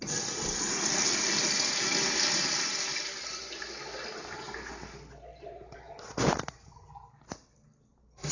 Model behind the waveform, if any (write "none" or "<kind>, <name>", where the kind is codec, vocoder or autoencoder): none